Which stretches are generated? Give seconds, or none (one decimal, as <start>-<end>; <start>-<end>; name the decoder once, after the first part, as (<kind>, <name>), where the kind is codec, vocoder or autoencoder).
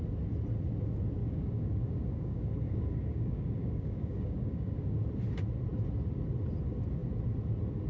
1.2-5.0 (codec, DAC)